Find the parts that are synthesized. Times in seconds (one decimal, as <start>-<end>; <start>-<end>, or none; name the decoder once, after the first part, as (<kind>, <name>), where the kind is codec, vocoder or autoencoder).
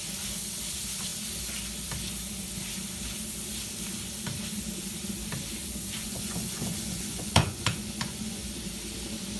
6.0-8.6 (vocoder, Vocos)